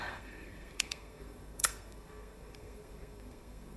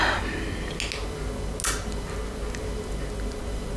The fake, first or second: first